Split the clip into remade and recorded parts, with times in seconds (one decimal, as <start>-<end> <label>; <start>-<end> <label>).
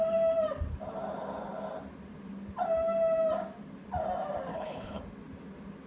0.0-4.5 recorded; 4.5-5.0 remade; 5.0-5.9 recorded